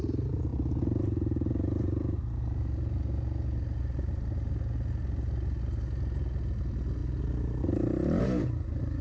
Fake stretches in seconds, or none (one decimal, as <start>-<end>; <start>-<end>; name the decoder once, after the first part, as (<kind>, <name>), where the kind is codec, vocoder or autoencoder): none